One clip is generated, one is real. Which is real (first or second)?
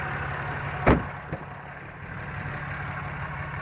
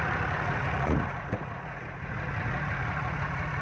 first